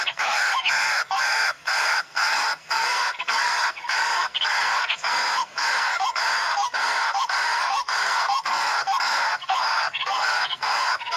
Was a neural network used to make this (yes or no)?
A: yes